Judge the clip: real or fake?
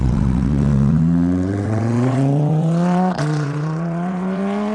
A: fake